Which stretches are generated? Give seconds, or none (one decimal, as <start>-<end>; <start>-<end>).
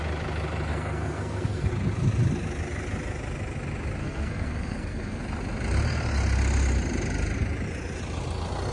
0.7-1.7; 4.0-5.2